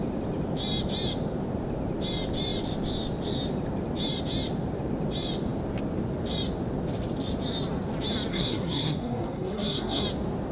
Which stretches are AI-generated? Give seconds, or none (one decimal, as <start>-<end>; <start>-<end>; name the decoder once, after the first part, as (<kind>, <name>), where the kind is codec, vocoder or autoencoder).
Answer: 8.3-10.0 (codec, SNAC)